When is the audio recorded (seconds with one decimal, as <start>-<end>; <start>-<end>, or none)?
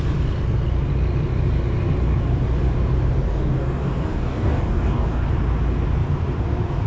0.0-3.3; 5.3-6.9